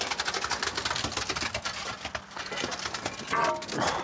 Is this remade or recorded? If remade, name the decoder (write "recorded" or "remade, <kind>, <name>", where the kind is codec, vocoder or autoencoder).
recorded